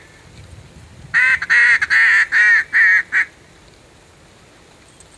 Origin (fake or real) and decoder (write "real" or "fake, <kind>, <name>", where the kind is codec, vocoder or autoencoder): real